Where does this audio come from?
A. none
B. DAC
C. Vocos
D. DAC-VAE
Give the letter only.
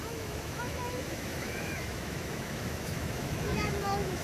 D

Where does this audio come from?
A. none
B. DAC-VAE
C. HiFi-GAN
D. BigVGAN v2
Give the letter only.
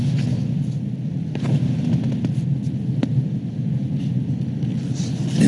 A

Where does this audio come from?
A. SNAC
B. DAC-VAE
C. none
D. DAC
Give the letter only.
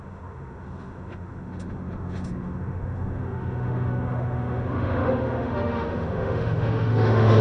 B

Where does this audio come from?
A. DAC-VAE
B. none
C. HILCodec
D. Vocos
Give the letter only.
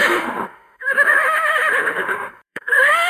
A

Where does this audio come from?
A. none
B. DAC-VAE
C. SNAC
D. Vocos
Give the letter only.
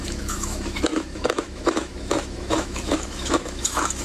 B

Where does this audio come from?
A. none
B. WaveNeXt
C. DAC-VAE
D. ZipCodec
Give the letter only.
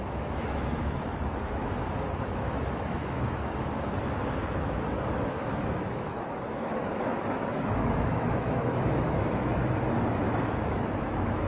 C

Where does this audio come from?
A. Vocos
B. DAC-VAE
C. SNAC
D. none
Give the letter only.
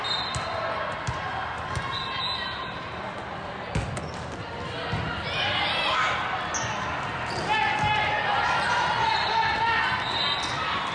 D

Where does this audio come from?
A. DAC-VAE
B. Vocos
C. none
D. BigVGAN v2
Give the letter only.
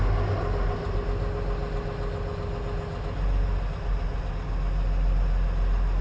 C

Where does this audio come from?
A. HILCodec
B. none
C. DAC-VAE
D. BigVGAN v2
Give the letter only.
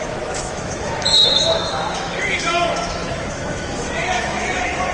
C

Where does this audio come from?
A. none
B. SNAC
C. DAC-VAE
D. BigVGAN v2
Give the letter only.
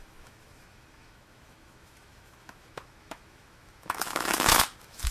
C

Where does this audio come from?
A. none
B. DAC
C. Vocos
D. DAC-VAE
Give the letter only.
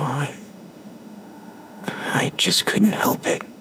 D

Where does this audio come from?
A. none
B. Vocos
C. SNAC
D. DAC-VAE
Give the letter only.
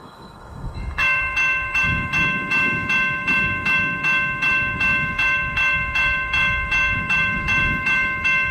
D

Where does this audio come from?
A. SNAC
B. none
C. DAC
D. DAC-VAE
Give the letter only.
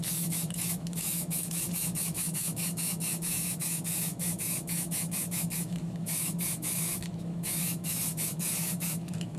D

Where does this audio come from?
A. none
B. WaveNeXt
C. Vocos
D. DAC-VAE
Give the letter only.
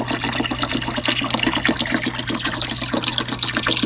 A